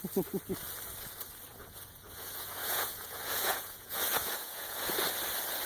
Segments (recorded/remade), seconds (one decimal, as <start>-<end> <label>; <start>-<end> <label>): 0.0-1.5 recorded; 1.5-4.9 remade; 4.9-5.7 recorded